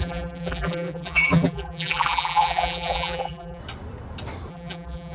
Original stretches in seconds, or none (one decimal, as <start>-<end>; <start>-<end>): 3.6-4.5